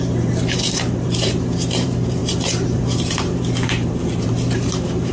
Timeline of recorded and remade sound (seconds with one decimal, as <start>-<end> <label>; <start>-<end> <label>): 0.0-5.1 remade